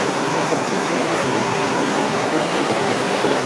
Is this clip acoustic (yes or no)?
no